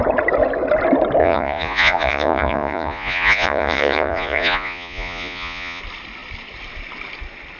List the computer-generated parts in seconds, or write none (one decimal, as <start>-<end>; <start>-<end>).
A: 1.2-5.8